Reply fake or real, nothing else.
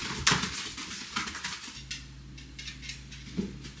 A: real